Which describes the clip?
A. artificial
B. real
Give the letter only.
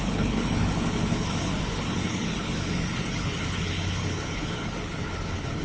A